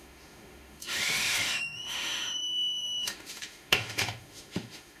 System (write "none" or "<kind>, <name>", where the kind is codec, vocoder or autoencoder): autoencoder, DAC-VAE